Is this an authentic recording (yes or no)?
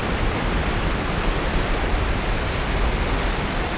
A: yes